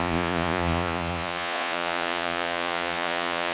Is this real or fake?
fake